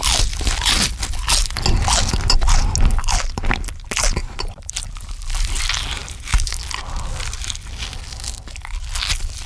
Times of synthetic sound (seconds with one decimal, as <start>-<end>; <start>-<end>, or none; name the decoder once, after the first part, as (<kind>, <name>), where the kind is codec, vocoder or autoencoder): 4.2-4.7 (vocoder, BigVGAN v2); 6.0-6.6